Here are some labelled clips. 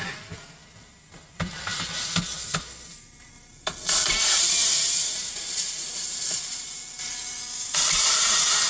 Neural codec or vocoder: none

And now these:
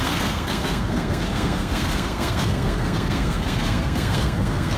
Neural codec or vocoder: codec, SNAC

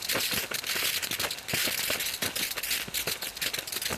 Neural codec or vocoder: none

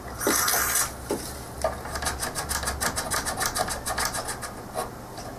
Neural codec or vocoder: none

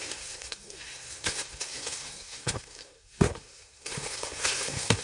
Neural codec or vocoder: codec, SNAC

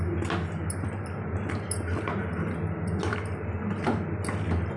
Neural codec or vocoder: none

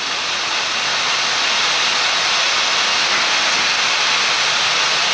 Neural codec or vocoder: none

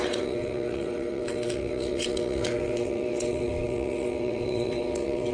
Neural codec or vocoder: vocoder, WaveNeXt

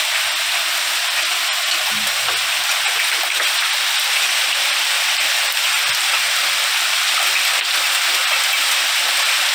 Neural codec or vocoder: none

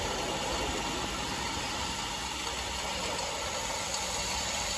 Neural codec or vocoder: none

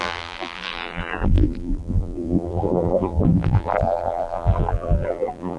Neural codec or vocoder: vocoder, BigVGAN v2